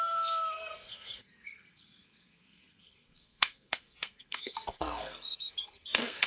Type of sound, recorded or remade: remade